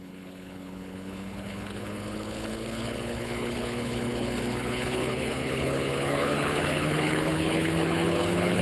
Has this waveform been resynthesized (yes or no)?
yes